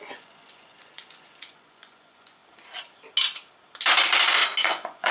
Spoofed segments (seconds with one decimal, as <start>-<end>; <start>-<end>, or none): 0.0-2.4; 4.6-5.1